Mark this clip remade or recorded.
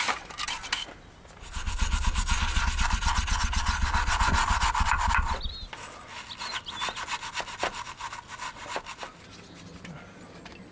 recorded